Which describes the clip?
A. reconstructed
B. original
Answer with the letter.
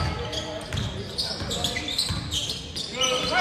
B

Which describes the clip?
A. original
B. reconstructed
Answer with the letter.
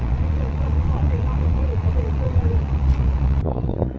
B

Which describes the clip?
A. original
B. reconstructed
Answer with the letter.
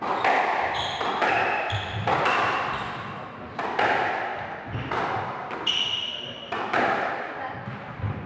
A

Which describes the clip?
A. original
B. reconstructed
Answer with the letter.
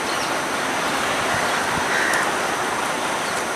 A